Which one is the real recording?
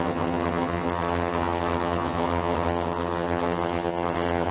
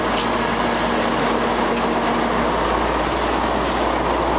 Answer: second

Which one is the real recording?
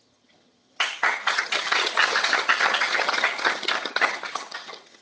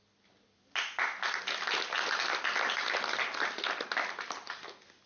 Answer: second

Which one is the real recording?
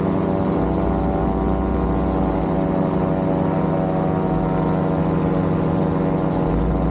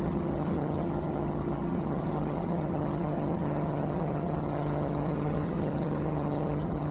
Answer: first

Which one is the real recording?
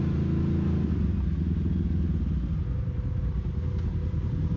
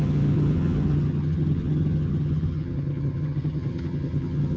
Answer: first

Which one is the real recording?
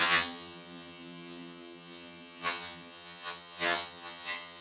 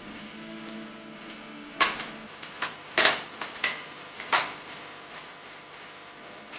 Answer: second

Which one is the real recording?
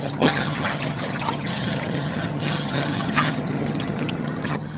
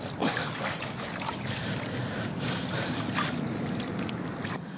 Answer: second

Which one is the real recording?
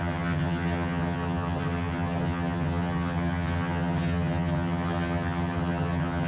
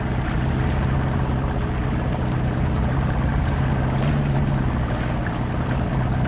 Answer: second